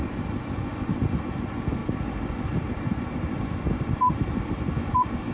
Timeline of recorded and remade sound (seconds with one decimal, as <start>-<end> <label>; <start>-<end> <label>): 0.0-1.8 recorded; 1.8-3.4 remade; 3.4-5.3 recorded